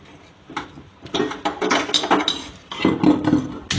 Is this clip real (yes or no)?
yes